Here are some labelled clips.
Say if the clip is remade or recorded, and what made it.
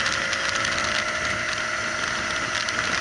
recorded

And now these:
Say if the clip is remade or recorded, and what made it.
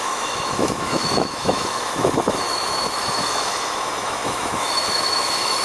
remade, autoencoder, DAC-VAE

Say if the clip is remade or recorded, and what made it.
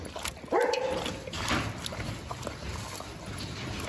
recorded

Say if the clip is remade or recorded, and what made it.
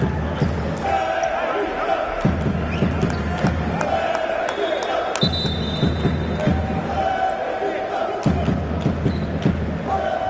recorded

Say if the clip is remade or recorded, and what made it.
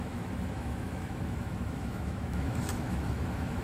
remade, autoencoder, DAC-VAE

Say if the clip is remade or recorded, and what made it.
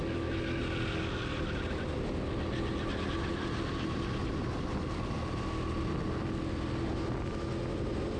recorded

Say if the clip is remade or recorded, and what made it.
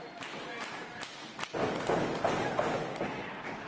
recorded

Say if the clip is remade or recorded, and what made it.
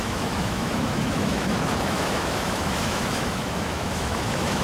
remade, autoencoder, DAC-VAE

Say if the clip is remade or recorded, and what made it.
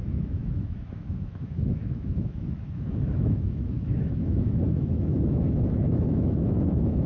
remade, autoencoder, DAC-VAE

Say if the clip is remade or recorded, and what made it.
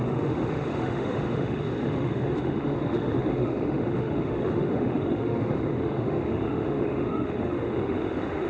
remade, autoencoder, DAC-VAE